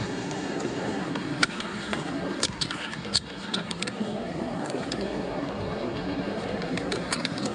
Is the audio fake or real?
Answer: fake